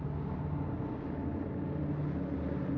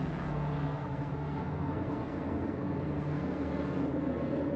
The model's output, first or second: second